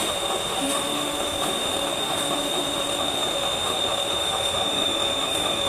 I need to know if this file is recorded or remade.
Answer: remade